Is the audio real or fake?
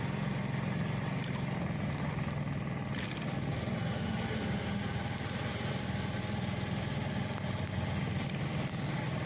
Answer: real